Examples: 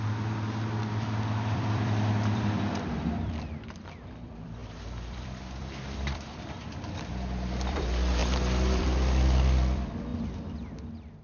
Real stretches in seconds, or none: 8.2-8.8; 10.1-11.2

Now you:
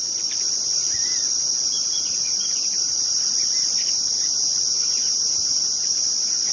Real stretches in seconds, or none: 3.9-6.5

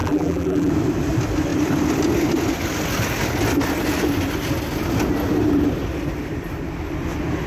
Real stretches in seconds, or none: 0.7-7.5

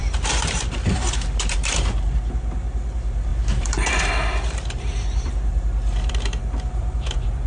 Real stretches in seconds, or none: none

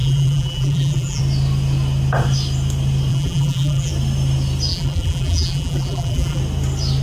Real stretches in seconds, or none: 1.2-3.1; 3.9-4.7; 6.4-7.0

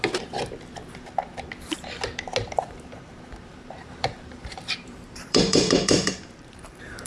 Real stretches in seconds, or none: 0.0-3.5

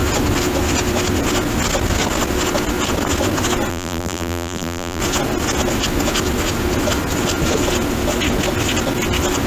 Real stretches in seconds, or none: 0.0-3.7; 5.0-9.5

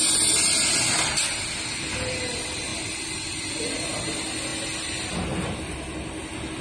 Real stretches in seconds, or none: 0.0-6.6